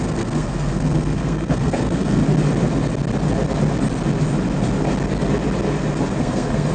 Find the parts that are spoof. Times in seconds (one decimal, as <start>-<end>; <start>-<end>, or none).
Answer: 0.0-2.2; 6.2-6.7